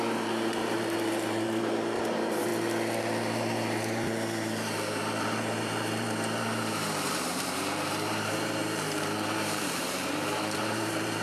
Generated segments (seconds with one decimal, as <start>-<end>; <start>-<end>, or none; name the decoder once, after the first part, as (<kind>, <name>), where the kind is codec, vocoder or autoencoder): 0.0-2.5 (vocoder, BigVGAN v2); 3.2-11.2